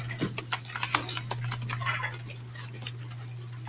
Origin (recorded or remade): recorded